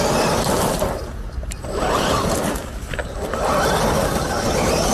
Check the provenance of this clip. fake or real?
real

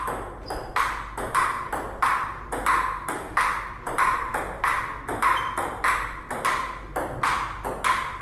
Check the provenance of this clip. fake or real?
real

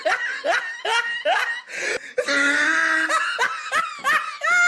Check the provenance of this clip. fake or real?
real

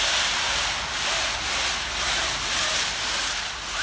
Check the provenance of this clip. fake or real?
real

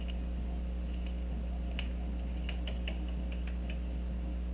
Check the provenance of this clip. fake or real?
real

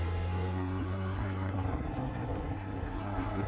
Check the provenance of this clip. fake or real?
fake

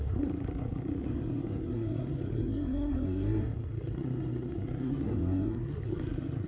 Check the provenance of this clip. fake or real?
fake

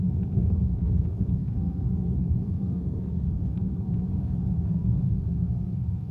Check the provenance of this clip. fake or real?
fake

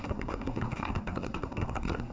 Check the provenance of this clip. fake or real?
fake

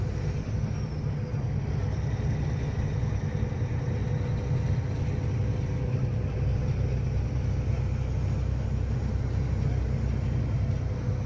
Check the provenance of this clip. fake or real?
real